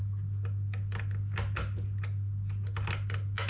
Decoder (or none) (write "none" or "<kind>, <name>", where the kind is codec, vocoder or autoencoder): none